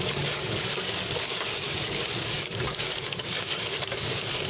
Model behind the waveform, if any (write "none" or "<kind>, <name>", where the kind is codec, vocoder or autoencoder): codec, DAC